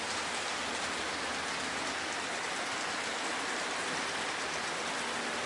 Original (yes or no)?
yes